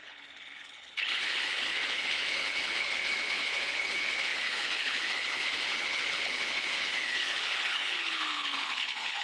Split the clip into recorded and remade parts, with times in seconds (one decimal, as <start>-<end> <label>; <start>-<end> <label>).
0.0-9.2 remade